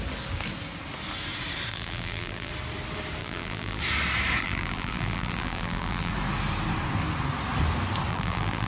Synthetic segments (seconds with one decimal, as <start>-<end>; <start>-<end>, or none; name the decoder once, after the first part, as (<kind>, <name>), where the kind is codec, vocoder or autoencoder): 1.7-2.5 (vocoder, BigVGAN v2); 3.2-3.8; 4.4-6.1; 8.1-8.7